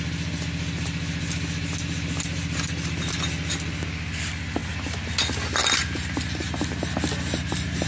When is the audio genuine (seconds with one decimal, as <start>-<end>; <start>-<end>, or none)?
0.0-7.9